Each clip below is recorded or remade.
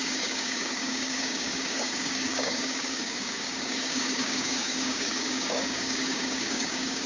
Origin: remade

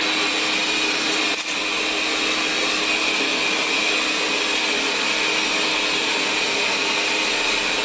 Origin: recorded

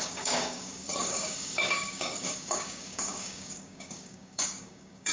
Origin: remade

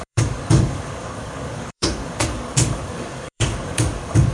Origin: remade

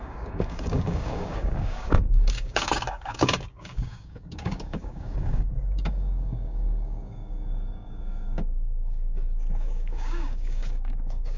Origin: remade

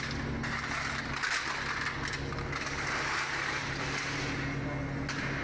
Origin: recorded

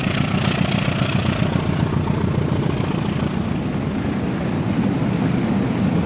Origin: recorded